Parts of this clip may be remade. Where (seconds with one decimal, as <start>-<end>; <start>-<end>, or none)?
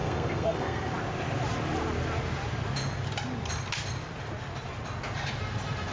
0.0-0.9